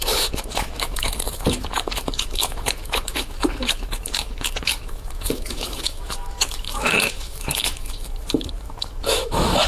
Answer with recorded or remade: remade